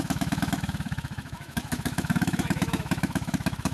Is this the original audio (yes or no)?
no